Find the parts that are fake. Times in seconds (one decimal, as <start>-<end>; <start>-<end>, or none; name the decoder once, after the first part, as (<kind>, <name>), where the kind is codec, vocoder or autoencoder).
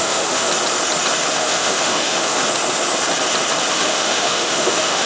0.0-0.5 (autoencoder, DAC-VAE); 1.3-2.4; 3.7-5.1